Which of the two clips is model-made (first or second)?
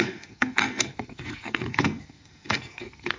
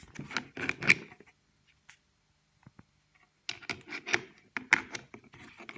first